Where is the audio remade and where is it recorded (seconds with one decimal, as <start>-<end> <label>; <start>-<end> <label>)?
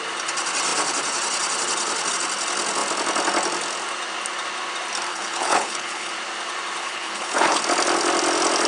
0.0-5.1 recorded; 5.1-6.1 remade; 6.1-6.8 recorded; 6.8-7.6 remade; 7.6-8.7 recorded